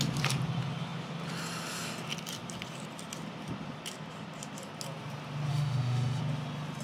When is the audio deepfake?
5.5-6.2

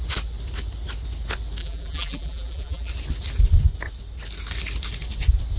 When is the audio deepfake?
1.6-2.9

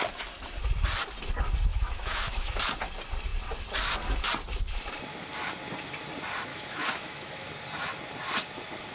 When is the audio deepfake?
1.7-2.5; 6.5-7.5